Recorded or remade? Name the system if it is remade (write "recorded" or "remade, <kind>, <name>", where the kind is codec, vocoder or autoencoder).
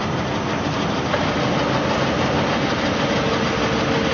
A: recorded